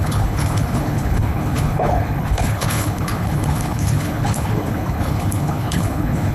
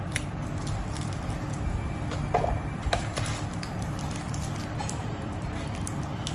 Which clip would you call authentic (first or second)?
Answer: second